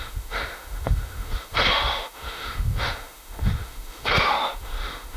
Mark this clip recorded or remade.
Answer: remade